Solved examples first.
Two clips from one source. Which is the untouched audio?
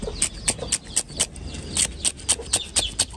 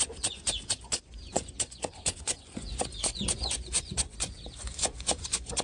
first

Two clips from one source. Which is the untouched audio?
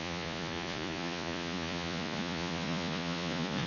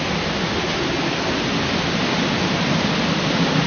second